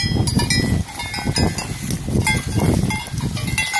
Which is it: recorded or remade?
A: recorded